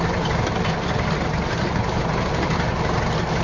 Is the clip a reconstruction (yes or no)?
no